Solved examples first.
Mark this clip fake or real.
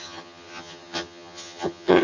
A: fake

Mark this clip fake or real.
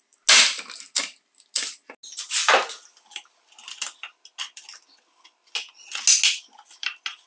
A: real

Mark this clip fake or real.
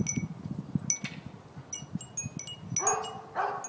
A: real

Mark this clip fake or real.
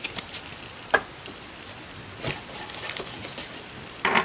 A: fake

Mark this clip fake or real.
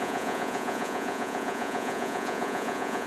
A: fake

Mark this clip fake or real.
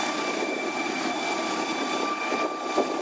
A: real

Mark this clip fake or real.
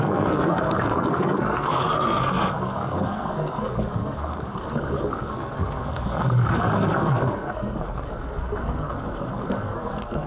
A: fake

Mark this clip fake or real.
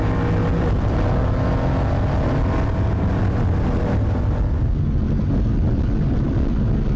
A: real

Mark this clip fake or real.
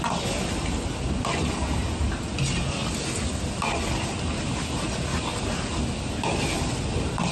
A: real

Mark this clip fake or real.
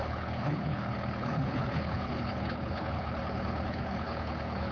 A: fake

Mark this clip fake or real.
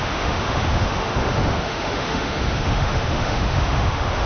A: fake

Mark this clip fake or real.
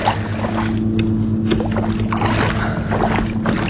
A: real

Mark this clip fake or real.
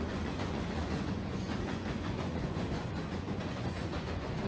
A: fake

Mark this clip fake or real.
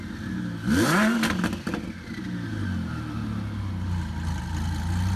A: real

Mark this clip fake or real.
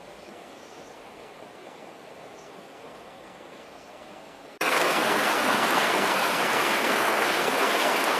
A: fake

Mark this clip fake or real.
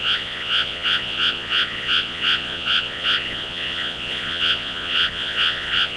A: fake